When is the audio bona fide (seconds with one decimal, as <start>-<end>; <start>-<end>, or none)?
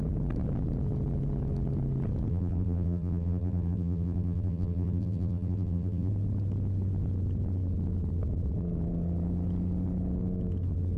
0.0-2.3; 6.1-11.0